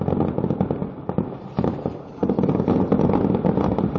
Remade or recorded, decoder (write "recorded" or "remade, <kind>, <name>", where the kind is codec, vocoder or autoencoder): recorded